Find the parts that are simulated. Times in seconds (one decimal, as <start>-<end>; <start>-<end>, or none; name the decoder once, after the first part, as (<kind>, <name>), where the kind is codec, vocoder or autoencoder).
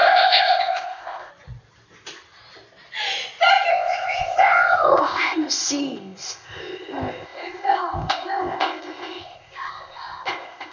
0.0-1.3 (codec, ZipCodec); 3.7-10.7